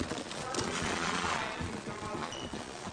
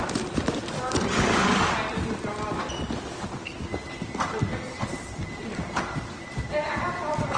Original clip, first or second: second